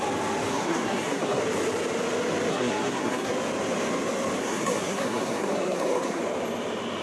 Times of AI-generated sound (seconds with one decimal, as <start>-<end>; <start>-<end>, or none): 0.5-1.4; 2.5-3.3; 4.4-6.2